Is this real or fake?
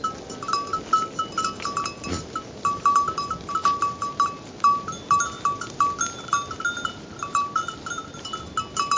real